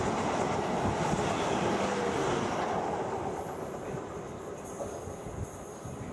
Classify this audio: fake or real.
real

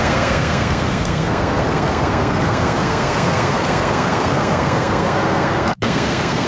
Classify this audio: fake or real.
fake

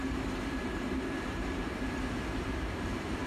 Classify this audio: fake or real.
fake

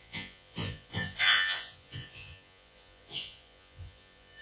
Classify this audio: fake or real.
fake